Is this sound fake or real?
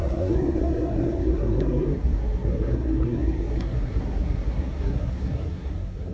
fake